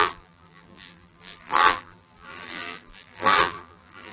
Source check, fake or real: fake